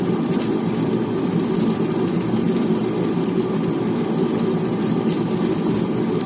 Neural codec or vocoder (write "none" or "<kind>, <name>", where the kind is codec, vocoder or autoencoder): none